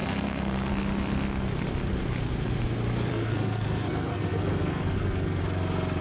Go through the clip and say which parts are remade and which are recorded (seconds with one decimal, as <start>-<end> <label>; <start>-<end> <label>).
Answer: 0.0-0.7 remade; 0.7-3.1 recorded; 3.1-5.4 remade; 5.4-6.0 recorded